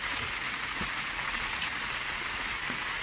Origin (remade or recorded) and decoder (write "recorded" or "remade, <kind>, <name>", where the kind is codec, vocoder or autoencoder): remade, vocoder, Vocos